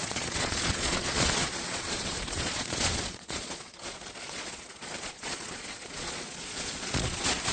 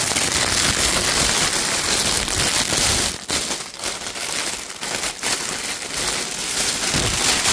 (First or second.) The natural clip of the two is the second